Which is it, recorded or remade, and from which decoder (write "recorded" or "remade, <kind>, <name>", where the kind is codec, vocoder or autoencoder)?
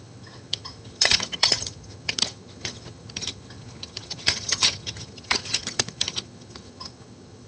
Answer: remade, vocoder, HiFi-GAN